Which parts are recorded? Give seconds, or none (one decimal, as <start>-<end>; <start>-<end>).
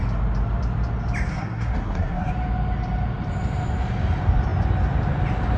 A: 0.0-1.3; 2.3-5.6